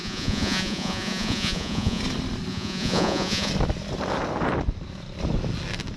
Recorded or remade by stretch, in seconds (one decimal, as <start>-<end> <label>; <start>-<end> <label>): 0.0-2.0 remade; 2.0-2.5 recorded; 2.5-3.5 remade; 3.5-6.0 recorded